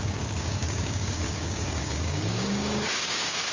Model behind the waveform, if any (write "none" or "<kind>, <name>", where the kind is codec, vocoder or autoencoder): codec, DAC